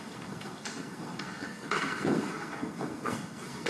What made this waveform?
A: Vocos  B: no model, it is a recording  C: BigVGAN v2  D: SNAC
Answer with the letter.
D